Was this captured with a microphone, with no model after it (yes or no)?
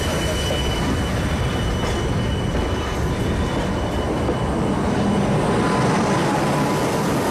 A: yes